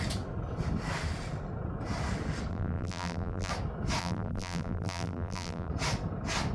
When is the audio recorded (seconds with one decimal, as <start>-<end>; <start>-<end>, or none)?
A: 0.0-2.5; 3.5-4.0; 5.7-6.5